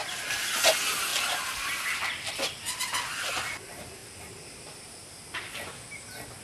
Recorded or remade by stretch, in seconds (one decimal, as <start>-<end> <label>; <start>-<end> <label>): 0.0-6.4 recorded